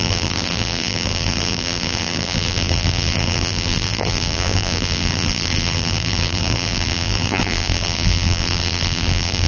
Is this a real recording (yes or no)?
no